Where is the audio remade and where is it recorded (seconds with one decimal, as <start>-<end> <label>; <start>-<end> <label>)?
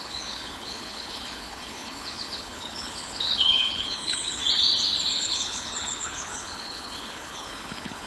0.0-4.4 remade; 4.4-5.1 recorded; 5.1-8.1 remade